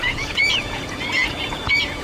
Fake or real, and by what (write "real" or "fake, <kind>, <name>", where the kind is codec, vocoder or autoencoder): fake, vocoder, Vocos